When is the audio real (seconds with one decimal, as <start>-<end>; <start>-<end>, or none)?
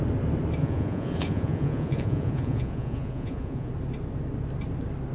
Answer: 0.0-0.6; 3.7-5.1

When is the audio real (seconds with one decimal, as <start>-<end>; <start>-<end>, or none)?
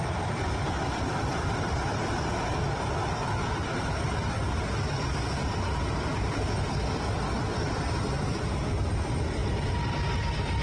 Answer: 4.4-8.8; 9.4-10.1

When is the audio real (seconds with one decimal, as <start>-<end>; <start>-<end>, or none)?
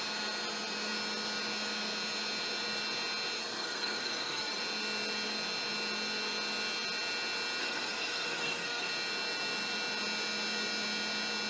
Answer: 0.0-3.4; 4.6-7.6; 8.9-11.5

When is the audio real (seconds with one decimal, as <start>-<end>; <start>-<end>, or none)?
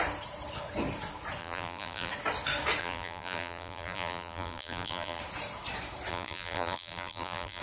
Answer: 0.0-1.4; 2.1-2.8; 5.2-6.1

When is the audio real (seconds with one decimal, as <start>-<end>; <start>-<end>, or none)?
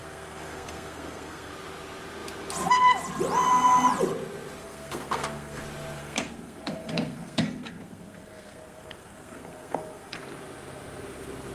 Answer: 1.5-4.6; 5.6-6.0; 10.2-11.5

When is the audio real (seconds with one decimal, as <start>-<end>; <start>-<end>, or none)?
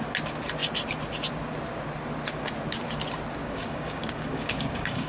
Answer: 0.0-3.4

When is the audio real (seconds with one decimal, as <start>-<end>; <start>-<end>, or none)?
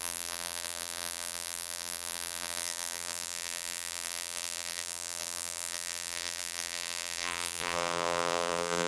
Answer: none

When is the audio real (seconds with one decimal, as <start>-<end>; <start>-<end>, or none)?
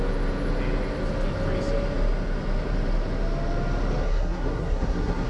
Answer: 0.0-4.0